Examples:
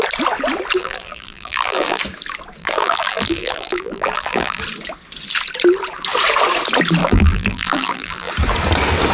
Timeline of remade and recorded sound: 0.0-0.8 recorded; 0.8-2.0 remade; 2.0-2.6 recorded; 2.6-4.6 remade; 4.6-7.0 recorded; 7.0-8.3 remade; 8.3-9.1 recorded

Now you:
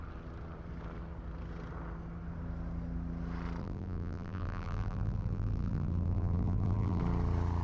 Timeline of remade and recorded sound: 0.0-3.6 recorded; 3.6-7.0 remade; 7.0-7.6 recorded

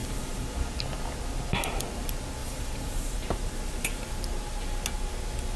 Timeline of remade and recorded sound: 0.0-0.5 remade; 0.5-2.4 recorded; 2.4-3.5 remade; 3.5-5.6 recorded

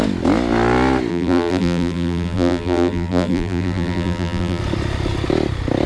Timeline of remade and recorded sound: 0.0-1.1 recorded; 1.1-4.6 remade; 4.6-5.9 recorded

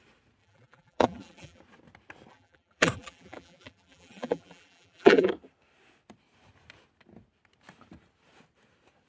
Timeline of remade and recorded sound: 0.0-0.4 recorded; 0.4-1.6 remade; 1.6-2.3 recorded; 2.3-5.3 remade; 5.3-9.1 recorded

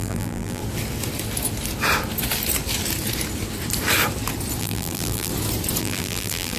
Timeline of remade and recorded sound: 0.0-0.6 remade; 0.6-4.6 recorded; 4.6-5.3 remade; 5.3-5.8 recorded; 5.8-6.6 remade

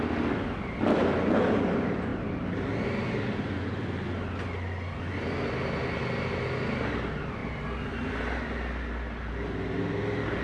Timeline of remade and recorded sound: 0.0-10.4 recorded